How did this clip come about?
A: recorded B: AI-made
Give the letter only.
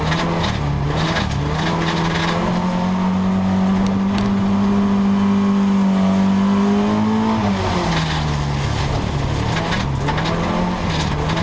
A